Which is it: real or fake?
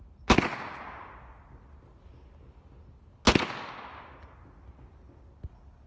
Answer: real